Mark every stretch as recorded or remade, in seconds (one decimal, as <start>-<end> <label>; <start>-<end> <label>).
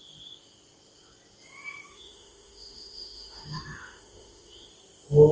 0.0-1.9 recorded; 1.9-4.7 remade; 4.7-5.3 recorded